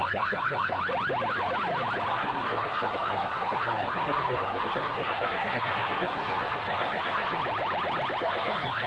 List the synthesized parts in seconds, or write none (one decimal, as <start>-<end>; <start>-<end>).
0.0-0.8; 2.1-7.4; 8.2-8.9